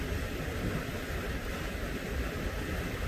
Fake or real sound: real